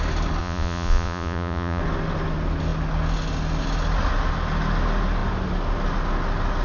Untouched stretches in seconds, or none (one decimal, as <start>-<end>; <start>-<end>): 0.0-0.4; 1.8-6.6